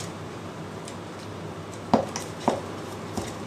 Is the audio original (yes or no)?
yes